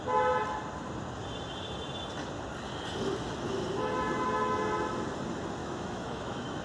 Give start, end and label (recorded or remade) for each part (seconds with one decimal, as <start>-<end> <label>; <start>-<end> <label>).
0.0-5.6 recorded; 5.6-6.6 remade